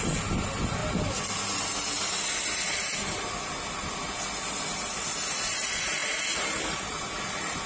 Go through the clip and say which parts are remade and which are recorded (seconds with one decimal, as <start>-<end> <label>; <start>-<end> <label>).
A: 0.0-7.7 recorded